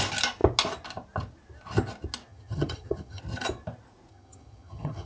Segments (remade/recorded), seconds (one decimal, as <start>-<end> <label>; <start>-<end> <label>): 0.0-2.3 recorded; 2.3-3.2 remade; 3.2-4.1 recorded; 4.1-5.1 remade